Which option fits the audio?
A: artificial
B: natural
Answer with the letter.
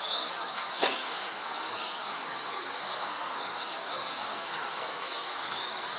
A